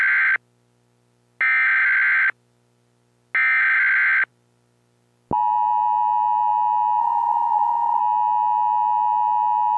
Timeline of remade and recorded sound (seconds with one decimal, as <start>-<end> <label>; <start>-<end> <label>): 0.0-7.0 recorded; 7.0-8.0 remade; 8.0-9.8 recorded